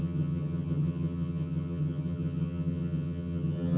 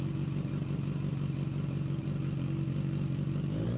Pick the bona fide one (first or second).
second